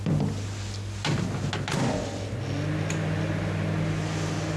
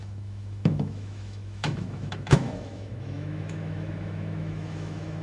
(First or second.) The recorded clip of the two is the first